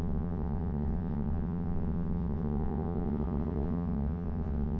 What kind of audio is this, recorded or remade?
remade